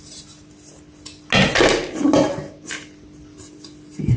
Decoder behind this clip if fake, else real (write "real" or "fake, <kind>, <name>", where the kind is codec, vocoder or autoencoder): real